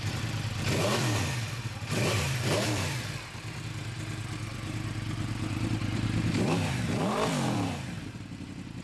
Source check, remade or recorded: remade